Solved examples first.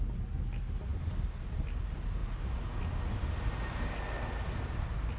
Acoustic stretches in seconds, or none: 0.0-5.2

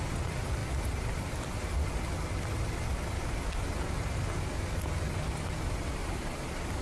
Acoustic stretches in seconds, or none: 0.0-6.8

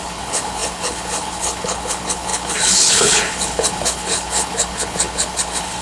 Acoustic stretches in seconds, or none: none

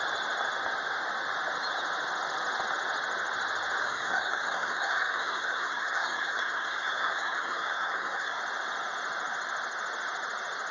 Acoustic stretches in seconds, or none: 0.0-3.8; 8.4-10.7

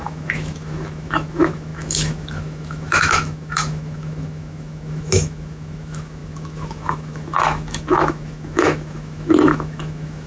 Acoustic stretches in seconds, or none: none

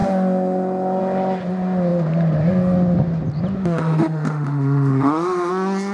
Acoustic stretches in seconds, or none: 0.0-3.6; 5.5-5.9

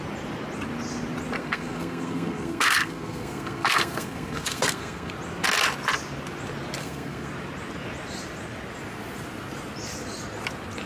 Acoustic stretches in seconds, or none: 0.0-1.4; 5.1-6.8; 7.3-10.9

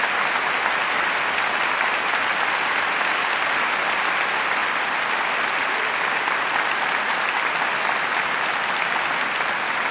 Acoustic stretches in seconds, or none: 0.0-9.9